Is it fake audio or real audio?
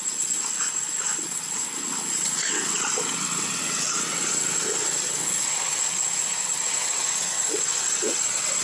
fake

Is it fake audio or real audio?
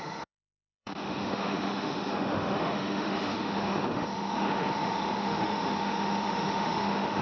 fake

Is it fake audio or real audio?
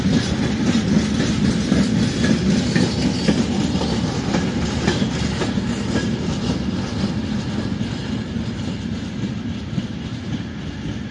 real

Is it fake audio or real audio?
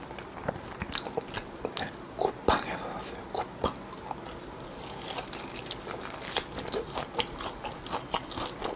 real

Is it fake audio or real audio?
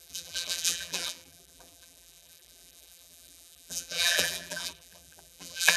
fake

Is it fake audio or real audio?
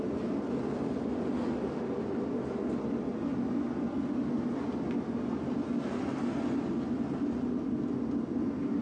real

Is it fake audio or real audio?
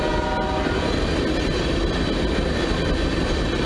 real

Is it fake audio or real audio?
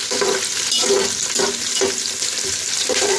real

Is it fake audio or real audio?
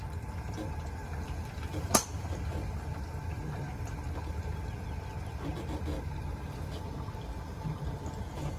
real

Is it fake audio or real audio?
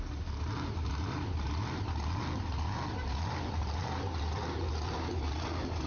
real